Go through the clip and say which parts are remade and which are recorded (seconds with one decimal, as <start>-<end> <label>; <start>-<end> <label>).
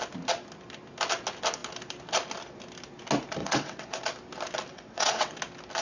0.0-3.4 recorded; 3.4-4.0 remade; 4.0-4.7 recorded; 4.7-5.3 remade; 5.3-5.8 recorded